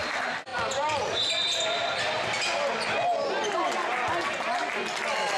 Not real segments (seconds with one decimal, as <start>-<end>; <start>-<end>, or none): none